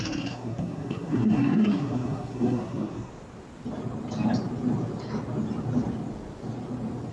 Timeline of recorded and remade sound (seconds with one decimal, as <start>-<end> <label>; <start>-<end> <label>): 0.0-3.1 remade; 3.1-7.1 recorded